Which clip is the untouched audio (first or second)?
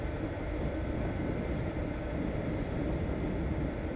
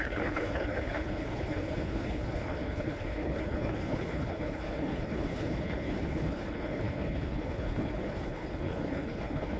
first